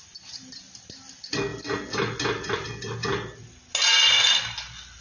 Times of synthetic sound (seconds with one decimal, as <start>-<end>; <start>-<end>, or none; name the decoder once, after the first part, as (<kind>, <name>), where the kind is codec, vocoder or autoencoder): none